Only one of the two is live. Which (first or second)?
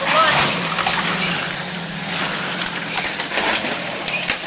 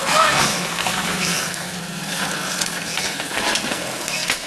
first